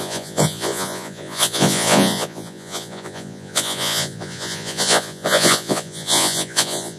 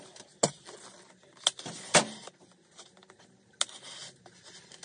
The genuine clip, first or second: second